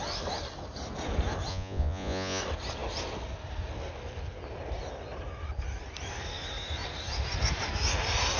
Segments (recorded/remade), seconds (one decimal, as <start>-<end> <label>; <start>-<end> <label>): 0.0-1.5 recorded; 1.5-2.4 remade; 2.4-8.4 recorded